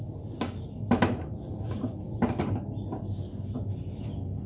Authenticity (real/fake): real